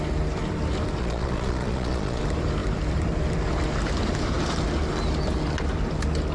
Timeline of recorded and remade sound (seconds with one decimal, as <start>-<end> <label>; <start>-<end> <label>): 0.0-1.0 recorded; 1.0-2.2 remade; 2.2-6.3 recorded